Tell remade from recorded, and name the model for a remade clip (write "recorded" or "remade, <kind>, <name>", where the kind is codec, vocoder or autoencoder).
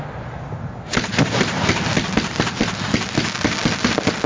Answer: recorded